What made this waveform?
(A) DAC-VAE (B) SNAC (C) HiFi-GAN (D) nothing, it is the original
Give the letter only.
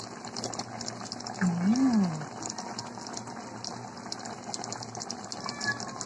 D